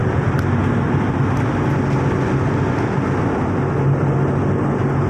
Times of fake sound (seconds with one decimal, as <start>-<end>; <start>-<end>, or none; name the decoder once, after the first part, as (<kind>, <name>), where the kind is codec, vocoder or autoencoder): none